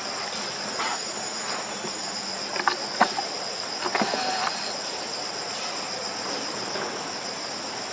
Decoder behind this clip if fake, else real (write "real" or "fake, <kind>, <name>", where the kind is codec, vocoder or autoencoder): real